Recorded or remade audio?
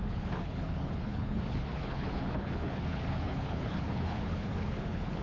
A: remade